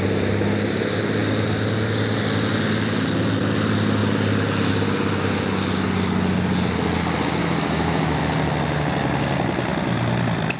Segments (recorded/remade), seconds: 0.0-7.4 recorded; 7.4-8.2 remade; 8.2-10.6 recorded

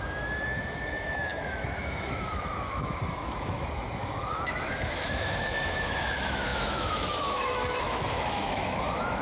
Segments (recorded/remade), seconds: 0.0-9.2 remade

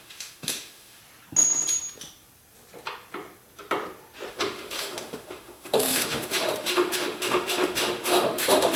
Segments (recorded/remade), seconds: 0.0-1.0 remade; 1.0-4.3 recorded; 4.3-8.8 remade

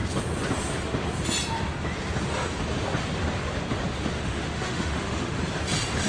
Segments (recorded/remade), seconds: 0.0-4.1 recorded; 4.1-5.3 remade; 5.3-6.1 recorded